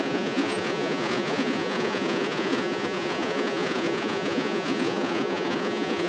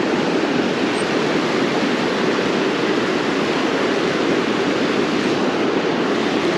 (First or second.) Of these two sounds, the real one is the second